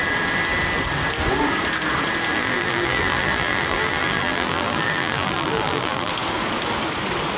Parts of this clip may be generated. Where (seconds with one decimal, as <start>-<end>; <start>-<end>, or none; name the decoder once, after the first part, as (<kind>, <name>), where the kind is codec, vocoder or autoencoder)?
2.3-6.1 (vocoder, BigVGAN v2)